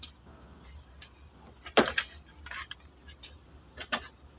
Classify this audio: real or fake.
real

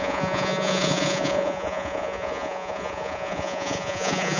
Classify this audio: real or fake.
fake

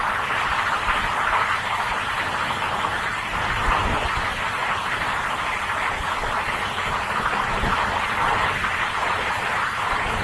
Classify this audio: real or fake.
real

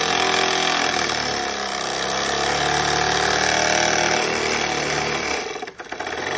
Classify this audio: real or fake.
real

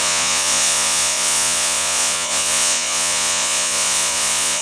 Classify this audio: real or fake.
fake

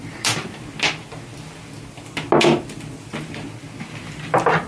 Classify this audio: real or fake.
real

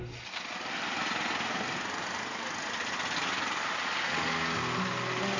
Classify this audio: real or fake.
real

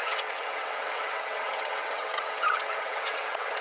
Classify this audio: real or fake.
fake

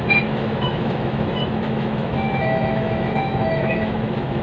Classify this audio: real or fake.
fake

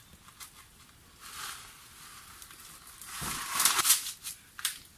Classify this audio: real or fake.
real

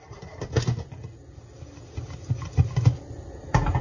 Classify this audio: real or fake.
real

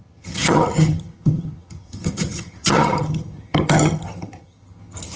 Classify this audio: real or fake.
fake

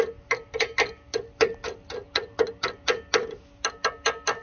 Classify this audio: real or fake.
real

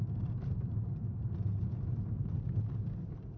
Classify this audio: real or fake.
real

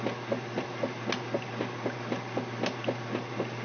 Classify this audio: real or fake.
real